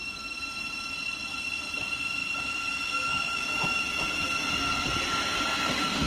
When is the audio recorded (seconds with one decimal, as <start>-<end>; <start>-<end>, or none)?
0.0-2.2; 4.5-6.1